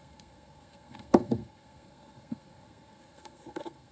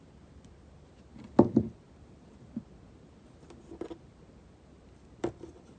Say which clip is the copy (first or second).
first